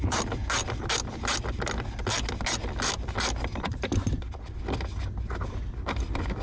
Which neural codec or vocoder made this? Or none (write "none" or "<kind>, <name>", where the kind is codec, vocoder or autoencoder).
none